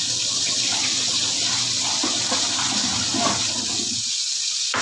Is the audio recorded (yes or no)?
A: yes